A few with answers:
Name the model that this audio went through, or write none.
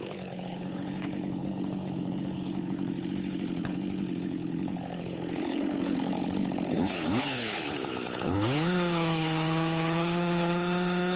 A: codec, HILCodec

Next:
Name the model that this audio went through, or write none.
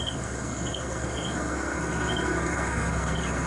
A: codec, SNAC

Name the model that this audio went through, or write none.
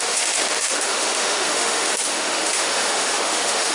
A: autoencoder, DAC-VAE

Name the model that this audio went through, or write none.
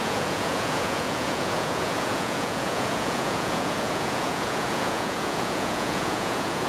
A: vocoder, Vocos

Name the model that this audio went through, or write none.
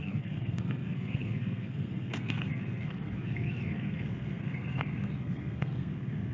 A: codec, SNAC